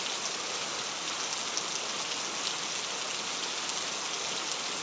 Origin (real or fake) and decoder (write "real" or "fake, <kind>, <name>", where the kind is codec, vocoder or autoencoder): real